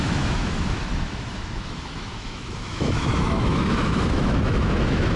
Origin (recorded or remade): remade